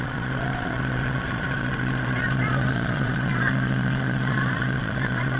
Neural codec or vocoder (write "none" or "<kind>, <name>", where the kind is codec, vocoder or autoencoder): vocoder, Vocos